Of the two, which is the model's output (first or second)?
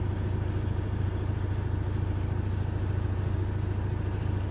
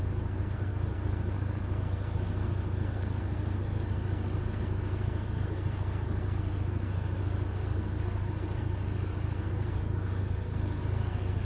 second